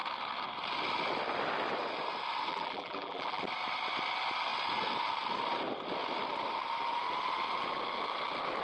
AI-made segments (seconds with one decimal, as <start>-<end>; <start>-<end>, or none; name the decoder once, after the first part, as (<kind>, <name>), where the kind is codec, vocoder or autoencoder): 2.5-3.4 (vocoder, BigVGAN v2)